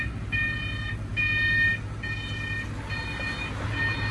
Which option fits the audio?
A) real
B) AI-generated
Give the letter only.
A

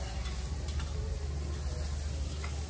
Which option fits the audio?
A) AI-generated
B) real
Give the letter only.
B